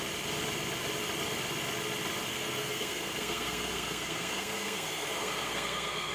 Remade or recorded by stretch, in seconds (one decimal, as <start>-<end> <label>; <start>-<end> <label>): 0.0-2.3 recorded; 2.3-6.1 remade